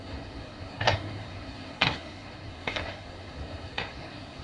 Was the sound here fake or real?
fake